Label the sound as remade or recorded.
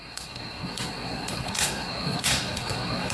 remade